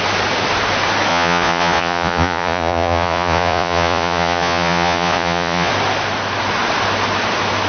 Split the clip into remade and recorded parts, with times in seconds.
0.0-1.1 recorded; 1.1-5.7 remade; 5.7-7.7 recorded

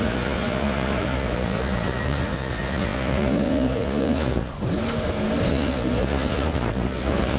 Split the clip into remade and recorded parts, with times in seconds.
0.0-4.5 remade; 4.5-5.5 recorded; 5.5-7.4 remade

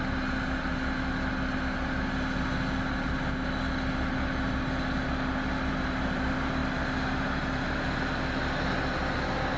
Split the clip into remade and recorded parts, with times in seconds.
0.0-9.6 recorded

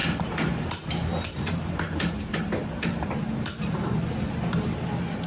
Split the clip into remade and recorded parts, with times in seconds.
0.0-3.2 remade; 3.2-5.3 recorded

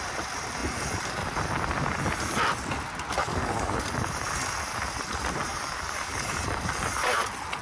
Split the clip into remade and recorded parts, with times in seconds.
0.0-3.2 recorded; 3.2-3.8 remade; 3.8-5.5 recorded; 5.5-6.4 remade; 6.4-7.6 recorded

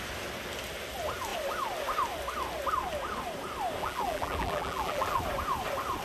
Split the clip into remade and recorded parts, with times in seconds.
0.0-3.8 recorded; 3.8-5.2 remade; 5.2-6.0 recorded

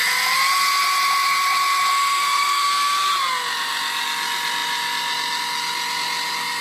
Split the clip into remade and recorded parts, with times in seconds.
0.0-1.9 recorded; 1.9-3.1 remade; 3.1-6.6 recorded